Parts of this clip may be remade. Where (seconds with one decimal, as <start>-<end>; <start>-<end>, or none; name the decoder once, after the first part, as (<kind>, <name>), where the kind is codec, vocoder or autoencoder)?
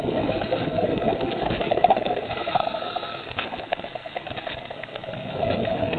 0.0-6.0 (codec, SNAC)